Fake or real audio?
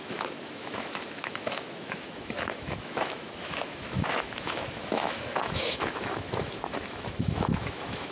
fake